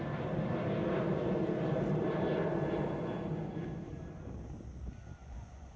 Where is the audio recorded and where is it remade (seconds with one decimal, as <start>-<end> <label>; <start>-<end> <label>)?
0.0-5.2 recorded; 5.2-5.8 remade